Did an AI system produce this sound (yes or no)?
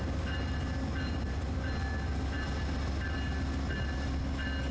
no